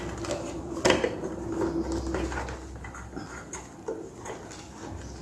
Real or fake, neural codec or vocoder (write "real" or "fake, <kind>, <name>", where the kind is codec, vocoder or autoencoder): real